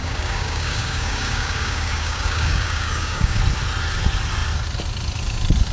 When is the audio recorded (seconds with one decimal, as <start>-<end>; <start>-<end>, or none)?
3.4-5.7